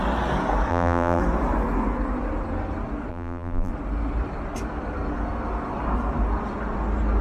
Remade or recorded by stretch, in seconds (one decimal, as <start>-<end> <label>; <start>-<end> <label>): 0.0-0.7 recorded; 0.7-1.2 remade; 1.2-3.1 recorded; 3.1-3.7 remade; 3.7-7.2 recorded